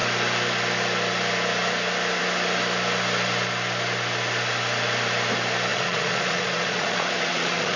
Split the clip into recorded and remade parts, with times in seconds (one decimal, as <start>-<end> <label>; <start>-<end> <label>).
0.0-5.7 recorded; 5.7-7.8 remade